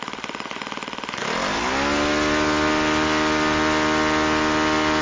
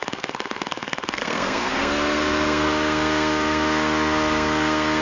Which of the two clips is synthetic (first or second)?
second